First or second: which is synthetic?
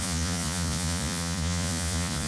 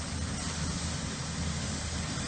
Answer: first